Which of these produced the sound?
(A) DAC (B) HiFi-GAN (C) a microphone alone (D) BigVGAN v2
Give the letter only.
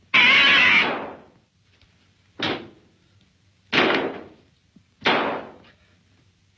C